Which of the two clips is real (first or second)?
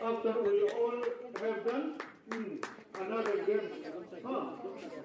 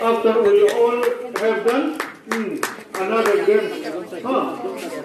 second